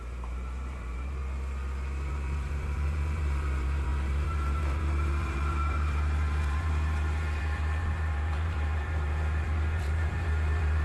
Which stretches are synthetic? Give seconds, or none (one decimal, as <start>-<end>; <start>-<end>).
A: 0.0-1.2; 2.1-10.8